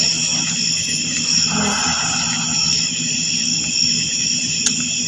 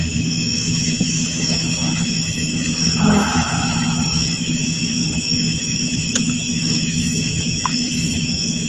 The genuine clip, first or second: first